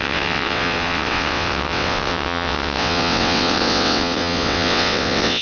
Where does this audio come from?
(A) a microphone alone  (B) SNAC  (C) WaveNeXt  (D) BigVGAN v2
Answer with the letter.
C